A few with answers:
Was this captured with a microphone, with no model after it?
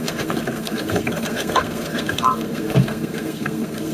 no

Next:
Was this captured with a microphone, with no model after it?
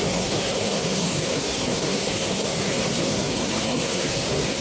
no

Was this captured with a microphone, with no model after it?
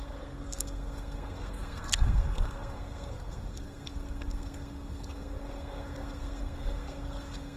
no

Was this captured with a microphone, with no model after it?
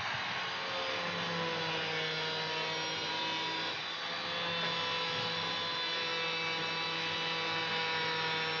yes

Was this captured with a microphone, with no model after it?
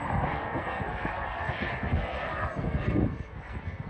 no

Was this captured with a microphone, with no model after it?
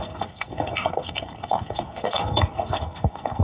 no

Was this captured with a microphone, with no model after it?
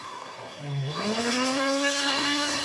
no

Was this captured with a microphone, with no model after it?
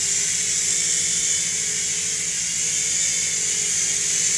yes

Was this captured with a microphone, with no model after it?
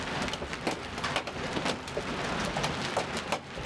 yes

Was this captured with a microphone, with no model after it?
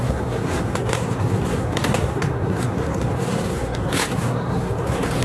no